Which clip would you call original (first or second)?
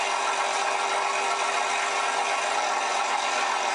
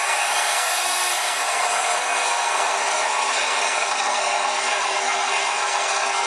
first